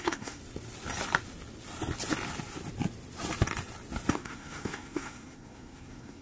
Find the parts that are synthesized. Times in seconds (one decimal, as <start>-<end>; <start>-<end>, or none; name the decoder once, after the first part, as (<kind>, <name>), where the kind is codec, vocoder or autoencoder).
0.0-0.4 (codec, SNAC); 4.1-6.2